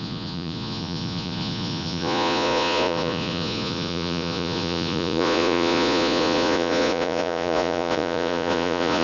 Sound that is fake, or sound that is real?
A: fake